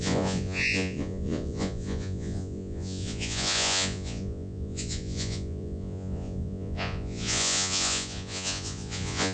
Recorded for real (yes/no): no